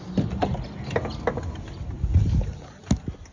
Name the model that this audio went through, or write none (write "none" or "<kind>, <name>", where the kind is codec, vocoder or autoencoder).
none